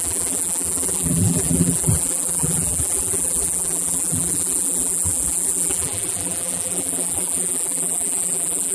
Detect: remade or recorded remade